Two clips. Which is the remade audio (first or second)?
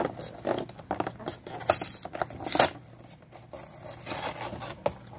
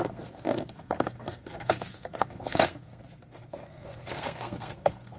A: second